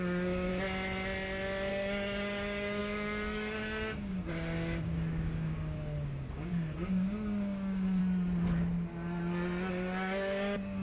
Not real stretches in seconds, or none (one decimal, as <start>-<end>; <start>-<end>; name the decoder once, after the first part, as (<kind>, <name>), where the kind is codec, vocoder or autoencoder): 0.0-0.5 (codec, DAC); 1.7-8.0; 9.7-10.8